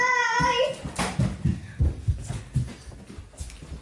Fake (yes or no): no